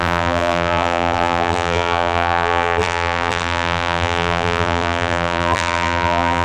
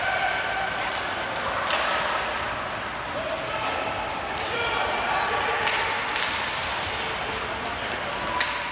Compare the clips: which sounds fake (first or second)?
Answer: first